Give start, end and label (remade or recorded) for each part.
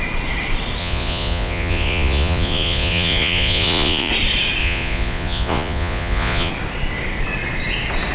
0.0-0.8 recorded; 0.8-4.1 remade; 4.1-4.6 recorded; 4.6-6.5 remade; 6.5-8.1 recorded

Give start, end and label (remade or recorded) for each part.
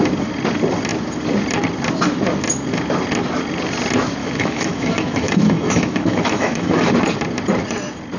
0.0-4.2 recorded; 4.2-6.9 remade; 6.9-8.2 recorded